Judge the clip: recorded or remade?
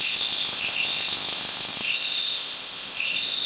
remade